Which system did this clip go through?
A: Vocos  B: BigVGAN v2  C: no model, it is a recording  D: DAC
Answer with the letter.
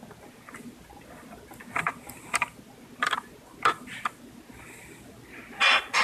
C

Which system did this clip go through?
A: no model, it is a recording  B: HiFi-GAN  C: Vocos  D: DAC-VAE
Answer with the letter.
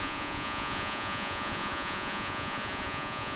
C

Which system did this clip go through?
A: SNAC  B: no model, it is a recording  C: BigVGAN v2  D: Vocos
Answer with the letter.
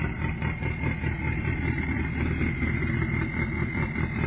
B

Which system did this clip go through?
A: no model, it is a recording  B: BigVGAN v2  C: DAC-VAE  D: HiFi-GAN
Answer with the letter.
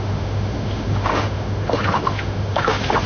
C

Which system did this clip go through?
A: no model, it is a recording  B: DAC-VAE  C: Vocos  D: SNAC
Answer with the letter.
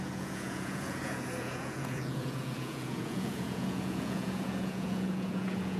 C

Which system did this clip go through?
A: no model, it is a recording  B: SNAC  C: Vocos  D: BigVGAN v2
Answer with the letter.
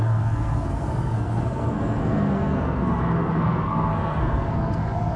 B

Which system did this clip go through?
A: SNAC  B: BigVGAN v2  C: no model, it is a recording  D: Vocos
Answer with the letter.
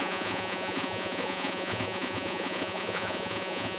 D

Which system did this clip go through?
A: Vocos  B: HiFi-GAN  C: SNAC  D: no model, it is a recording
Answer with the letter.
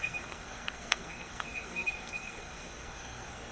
C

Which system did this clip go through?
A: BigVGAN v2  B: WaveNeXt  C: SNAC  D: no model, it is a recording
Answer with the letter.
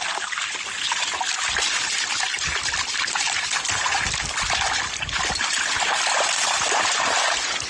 D